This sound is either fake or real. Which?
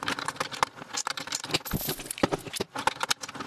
real